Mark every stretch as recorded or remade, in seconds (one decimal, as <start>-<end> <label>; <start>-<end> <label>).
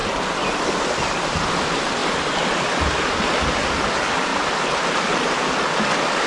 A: 0.0-6.3 recorded